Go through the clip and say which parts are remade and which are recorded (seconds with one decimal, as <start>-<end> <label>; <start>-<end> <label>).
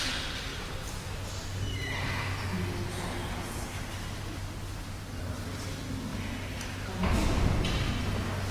0.0-8.5 recorded